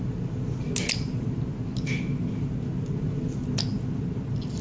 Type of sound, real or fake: real